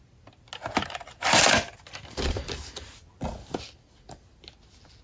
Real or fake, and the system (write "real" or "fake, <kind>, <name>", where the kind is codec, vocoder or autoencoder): real